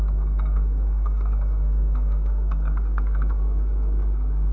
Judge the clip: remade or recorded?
remade